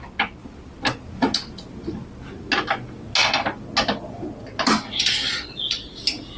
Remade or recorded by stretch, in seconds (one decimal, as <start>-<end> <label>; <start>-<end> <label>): 0.0-6.4 recorded